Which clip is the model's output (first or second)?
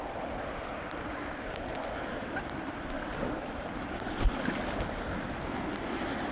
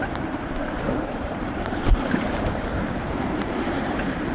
second